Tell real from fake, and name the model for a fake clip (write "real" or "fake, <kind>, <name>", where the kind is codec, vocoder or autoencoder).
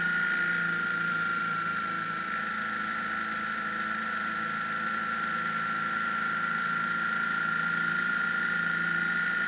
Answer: fake, vocoder, BigVGAN v2